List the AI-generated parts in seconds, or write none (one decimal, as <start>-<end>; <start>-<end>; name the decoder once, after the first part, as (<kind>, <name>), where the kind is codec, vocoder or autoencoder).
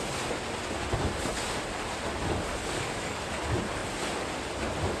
2.6-3.2 (codec, DAC)